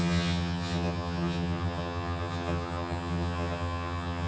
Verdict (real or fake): fake